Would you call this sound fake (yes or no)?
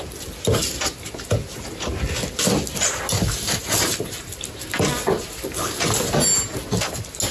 no